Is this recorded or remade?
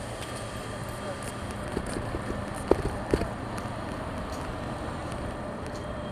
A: recorded